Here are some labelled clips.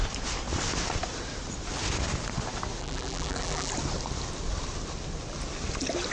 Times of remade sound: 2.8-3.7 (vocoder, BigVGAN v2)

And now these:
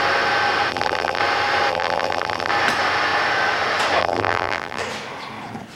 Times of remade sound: 0.7-1.2 (vocoder, BigVGAN v2); 1.7-2.5; 4.0-4.8

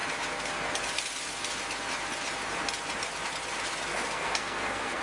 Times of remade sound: 3.9-5.0 (codec, SNAC)

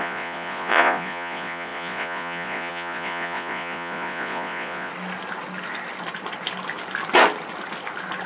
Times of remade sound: 0.0-4.9 (vocoder, Vocos)

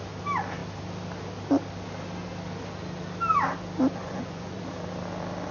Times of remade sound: 4.0-4.6 (vocoder, Vocos)